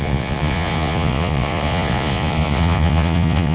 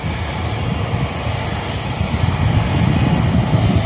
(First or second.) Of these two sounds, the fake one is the first